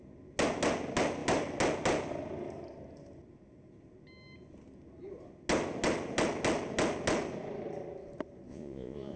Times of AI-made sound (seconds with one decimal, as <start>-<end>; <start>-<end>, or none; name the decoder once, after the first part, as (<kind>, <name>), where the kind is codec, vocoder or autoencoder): 8.5-9.2 (vocoder, Vocos)

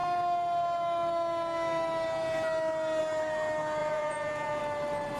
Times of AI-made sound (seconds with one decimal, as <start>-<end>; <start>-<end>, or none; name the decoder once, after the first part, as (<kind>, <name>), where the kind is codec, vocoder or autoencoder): 3.8-4.6 (vocoder, Vocos)

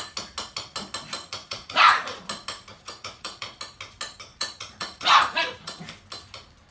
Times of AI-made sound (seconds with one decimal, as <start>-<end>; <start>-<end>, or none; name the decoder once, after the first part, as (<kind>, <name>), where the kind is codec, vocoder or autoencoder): 1.2-2.2 (vocoder, Vocos); 2.7-3.5; 4.3-5.9

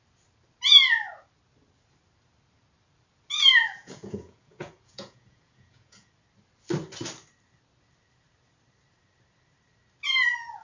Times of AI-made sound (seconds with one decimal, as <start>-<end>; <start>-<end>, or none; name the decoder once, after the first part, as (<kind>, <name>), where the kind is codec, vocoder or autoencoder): 3.8-6.1 (vocoder, Vocos)

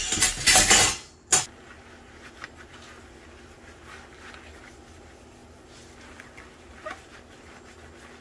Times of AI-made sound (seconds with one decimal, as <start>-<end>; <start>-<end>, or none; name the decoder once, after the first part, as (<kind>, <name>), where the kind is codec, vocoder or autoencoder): none

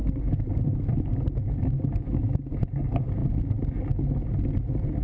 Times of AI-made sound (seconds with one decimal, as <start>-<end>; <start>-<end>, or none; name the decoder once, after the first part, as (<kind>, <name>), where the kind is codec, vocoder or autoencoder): none

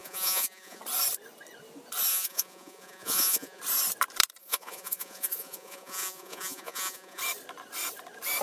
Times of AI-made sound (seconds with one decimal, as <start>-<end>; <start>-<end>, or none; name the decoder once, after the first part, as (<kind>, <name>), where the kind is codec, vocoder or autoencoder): 0.0-0.8 (vocoder, Vocos); 2.1-3.6; 4.4-7.2

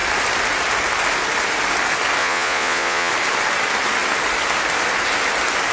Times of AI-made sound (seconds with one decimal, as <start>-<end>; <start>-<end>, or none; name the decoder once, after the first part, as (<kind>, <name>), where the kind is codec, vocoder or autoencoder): 2.2-3.1 (vocoder, Vocos)